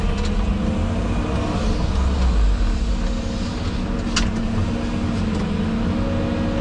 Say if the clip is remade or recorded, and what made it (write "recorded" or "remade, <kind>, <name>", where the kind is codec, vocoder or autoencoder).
recorded